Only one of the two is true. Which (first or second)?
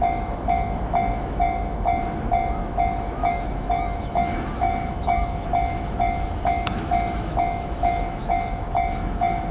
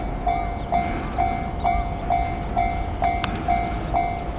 second